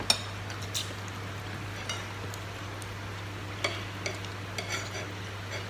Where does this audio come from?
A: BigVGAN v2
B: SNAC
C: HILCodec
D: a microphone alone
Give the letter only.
D